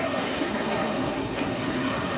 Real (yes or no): no